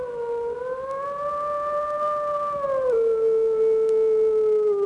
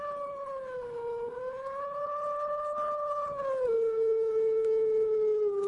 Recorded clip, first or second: first